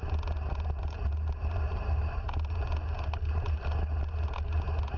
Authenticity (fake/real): real